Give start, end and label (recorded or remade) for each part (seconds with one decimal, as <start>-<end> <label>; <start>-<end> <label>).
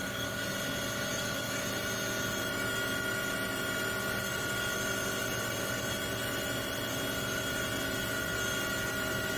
0.0-0.5 remade; 0.5-1.1 recorded; 1.1-1.6 remade; 1.6-9.4 recorded